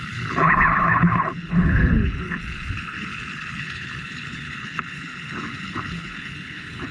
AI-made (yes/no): yes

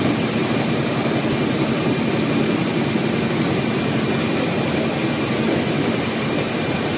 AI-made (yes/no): no